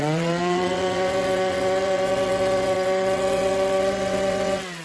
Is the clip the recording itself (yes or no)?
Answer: no